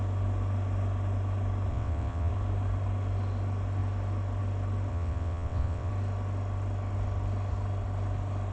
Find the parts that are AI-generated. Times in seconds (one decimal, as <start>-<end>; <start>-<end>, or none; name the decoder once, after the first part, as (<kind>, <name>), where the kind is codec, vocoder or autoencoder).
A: 1.7-2.3 (vocoder, WaveNeXt); 4.9-5.9